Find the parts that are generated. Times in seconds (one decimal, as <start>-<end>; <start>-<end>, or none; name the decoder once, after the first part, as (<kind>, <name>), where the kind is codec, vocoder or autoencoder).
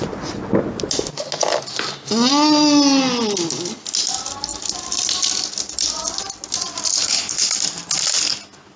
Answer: 6.9-7.5 (codec, HILCodec)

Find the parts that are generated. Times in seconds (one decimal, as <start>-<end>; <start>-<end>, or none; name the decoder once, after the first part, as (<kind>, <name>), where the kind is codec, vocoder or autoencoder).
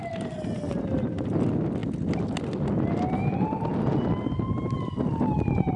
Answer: none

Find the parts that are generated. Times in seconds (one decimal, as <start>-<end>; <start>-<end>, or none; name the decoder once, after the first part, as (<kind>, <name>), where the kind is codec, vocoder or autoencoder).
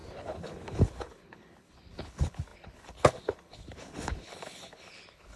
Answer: 0.0-5.4 (codec, HILCodec)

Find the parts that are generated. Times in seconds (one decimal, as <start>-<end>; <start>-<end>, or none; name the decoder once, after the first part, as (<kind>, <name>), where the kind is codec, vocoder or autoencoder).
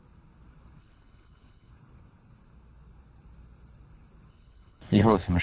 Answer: 0.8-1.7 (codec, HILCodec); 4.3-5.4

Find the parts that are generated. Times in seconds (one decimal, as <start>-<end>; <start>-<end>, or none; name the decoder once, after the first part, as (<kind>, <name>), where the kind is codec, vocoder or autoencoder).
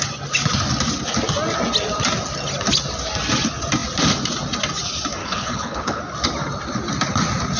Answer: 5.2-6.0 (codec, HILCodec)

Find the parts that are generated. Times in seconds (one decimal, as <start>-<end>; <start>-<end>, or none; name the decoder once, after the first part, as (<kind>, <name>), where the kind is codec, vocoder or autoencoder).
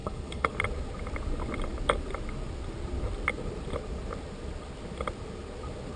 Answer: 0.0-0.5 (codec, HILCodec)